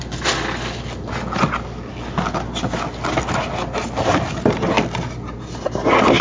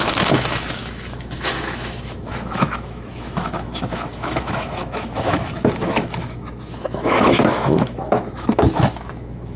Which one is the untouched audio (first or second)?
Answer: first